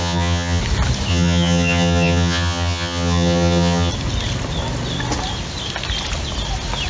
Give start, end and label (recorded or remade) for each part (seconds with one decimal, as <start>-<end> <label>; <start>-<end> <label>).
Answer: 0.0-0.6 remade; 0.6-1.1 recorded; 1.1-3.9 remade; 3.9-6.9 recorded

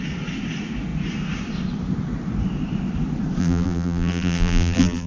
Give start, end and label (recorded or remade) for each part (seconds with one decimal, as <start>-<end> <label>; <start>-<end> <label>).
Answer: 0.0-3.4 recorded; 3.4-5.1 remade